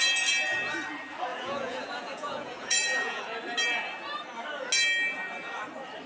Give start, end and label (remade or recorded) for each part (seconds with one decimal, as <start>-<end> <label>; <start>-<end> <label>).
0.0-1.3 recorded; 1.3-3.2 remade; 3.2-6.1 recorded